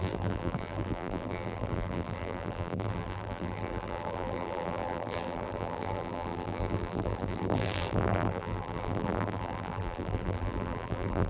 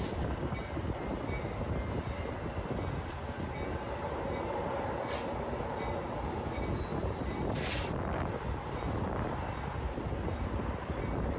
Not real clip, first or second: first